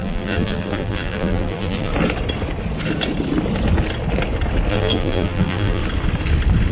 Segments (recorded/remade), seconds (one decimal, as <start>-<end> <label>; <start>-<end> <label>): 0.0-1.9 remade; 1.9-4.7 recorded; 4.7-5.8 remade; 5.8-6.7 recorded